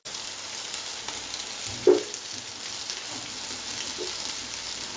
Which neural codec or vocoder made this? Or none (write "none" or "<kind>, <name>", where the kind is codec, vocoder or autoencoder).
none